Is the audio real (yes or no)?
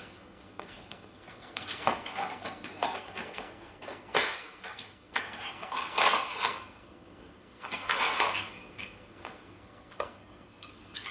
no